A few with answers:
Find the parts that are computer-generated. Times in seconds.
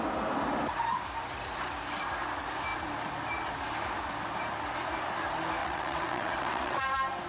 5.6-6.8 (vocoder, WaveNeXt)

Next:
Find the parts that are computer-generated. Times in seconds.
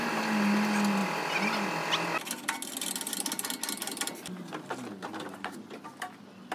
none